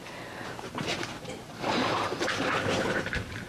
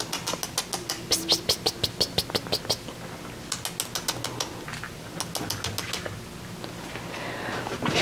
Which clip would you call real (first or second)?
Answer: second